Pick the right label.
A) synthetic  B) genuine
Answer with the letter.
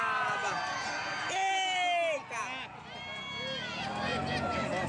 B